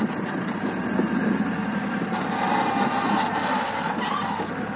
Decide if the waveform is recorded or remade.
recorded